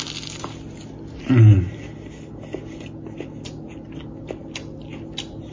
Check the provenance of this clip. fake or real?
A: real